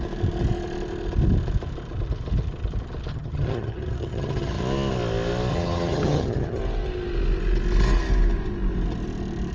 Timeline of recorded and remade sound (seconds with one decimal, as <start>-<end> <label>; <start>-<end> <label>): 0.0-3.1 recorded; 3.1-4.6 remade; 4.6-5.5 recorded; 5.5-6.6 remade; 6.6-9.5 recorded